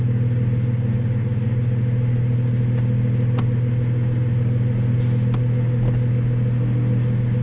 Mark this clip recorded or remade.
recorded